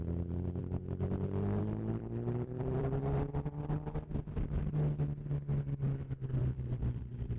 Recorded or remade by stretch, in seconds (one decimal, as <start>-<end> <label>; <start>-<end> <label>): 0.0-2.0 recorded; 2.0-3.0 remade; 3.0-6.4 recorded; 6.4-7.4 remade